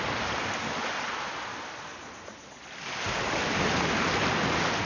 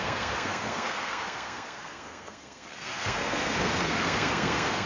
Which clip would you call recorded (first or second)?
first